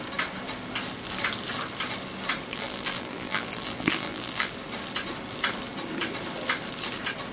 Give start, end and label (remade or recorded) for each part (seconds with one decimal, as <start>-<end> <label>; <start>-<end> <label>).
0.0-2.5 recorded; 2.5-4.5 remade; 4.5-7.3 recorded